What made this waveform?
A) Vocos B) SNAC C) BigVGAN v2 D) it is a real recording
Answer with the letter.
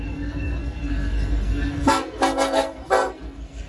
B